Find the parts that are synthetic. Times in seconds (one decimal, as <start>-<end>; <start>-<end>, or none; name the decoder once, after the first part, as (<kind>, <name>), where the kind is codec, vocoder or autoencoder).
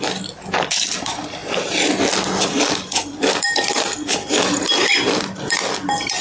0.0-6.2 (vocoder, BigVGAN v2)